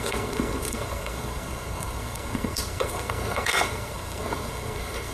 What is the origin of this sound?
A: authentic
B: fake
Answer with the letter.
B